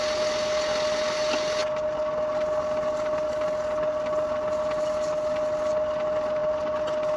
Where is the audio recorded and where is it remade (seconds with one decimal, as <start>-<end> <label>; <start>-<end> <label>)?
0.0-7.2 recorded